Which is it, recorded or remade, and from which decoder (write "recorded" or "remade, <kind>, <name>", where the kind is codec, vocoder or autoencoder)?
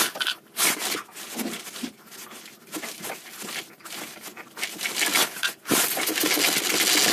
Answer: recorded